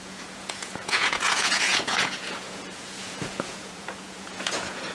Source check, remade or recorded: remade